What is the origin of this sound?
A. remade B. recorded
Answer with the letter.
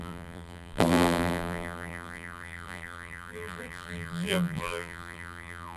A